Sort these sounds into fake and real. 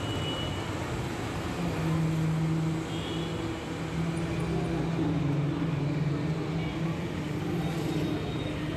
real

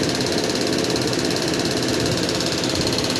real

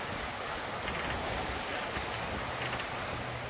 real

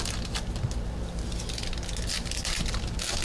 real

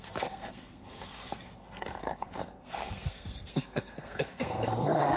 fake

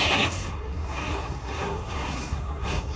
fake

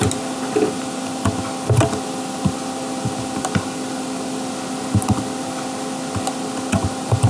real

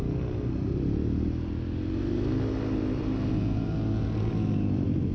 real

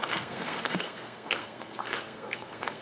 fake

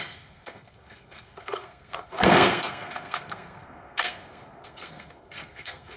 fake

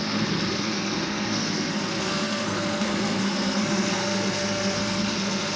fake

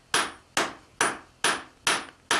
real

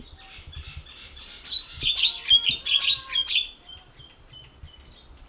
real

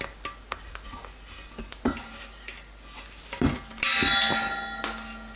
real